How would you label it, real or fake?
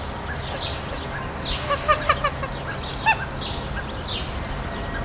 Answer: real